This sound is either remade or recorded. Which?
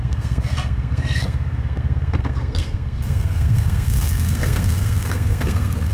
remade